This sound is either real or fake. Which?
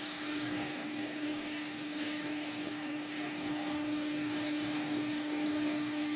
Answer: fake